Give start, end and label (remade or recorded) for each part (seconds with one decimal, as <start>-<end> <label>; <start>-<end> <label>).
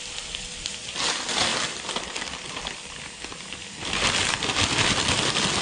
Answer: 0.0-1.5 recorded; 1.5-4.9 remade; 4.9-5.6 recorded